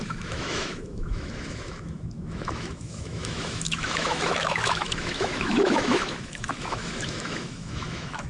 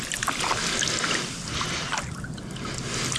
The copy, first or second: first